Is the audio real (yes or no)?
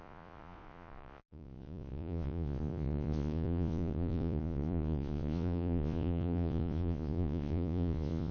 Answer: no